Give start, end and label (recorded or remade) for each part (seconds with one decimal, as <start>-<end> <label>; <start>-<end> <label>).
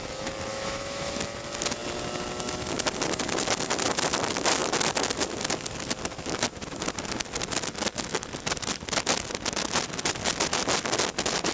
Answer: 0.0-0.5 recorded; 0.5-1.2 remade; 1.2-11.5 recorded